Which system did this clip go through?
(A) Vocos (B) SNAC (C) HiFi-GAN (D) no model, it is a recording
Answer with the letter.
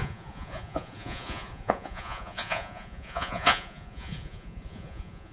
A